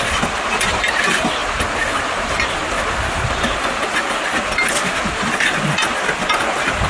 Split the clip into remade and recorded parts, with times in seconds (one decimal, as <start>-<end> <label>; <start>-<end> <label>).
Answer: 0.0-6.9 recorded

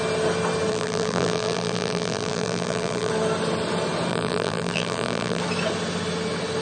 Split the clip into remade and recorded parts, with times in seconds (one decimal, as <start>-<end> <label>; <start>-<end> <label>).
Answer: 0.0-0.7 recorded; 0.7-3.1 remade; 3.1-4.1 recorded; 4.1-5.4 remade; 5.4-6.6 recorded

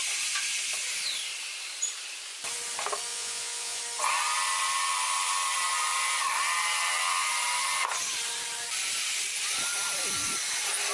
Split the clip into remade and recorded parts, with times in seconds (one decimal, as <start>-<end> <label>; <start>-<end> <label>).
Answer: 0.0-3.1 recorded; 3.1-3.8 remade; 3.8-10.9 recorded

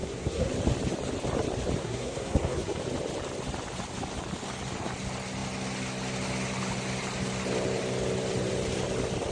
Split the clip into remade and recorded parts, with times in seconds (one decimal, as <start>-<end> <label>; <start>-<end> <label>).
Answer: 0.0-0.5 remade; 0.5-1.8 recorded; 1.8-2.8 remade; 2.8-9.3 recorded

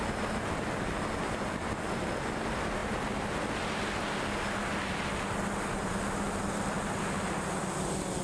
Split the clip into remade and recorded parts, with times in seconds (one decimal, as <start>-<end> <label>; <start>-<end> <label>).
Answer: 0.0-8.2 recorded

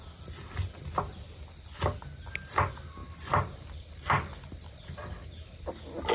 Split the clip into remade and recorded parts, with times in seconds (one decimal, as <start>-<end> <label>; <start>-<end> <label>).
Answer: 0.0-3.0 recorded; 3.0-5.6 remade; 5.6-6.1 recorded

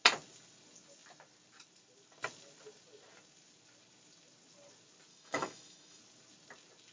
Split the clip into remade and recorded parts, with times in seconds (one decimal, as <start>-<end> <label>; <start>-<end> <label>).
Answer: 0.0-5.1 recorded; 5.1-6.0 remade; 6.0-6.9 recorded

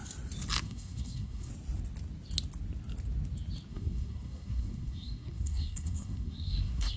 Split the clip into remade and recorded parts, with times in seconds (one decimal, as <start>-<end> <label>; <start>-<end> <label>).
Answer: 0.0-0.6 recorded; 0.6-1.5 remade; 1.5-3.7 recorded; 3.7-7.0 remade